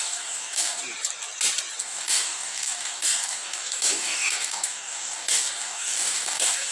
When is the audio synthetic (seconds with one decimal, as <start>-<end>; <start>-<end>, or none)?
0.0-0.8; 1.8-6.7